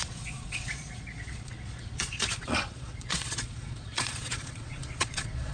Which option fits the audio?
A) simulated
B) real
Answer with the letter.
A